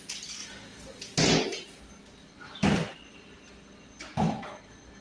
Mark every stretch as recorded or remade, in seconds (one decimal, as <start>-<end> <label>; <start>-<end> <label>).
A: 0.0-5.0 recorded